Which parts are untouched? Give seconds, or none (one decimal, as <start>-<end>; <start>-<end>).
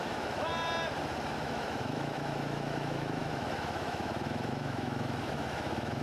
0.5-1.4